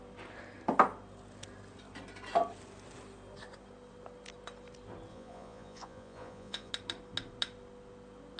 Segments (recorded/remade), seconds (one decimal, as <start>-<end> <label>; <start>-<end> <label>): 0.0-5.1 recorded; 5.1-6.7 remade; 6.7-8.4 recorded